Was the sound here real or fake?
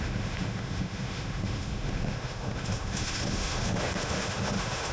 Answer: fake